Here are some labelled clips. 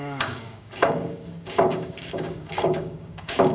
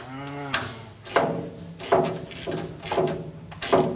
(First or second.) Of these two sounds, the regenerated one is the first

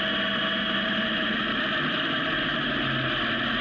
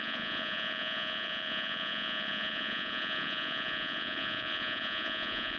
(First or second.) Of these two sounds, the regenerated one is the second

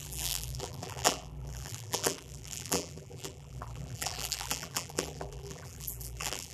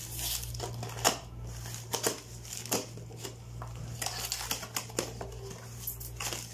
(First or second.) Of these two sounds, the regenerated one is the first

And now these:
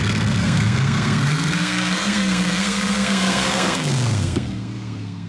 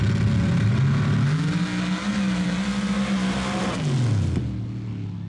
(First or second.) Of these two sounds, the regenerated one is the first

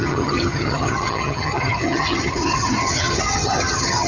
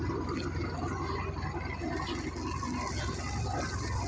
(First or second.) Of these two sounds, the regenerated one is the first